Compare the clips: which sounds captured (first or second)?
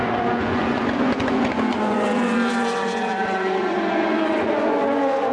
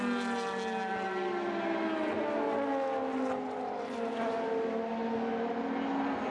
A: second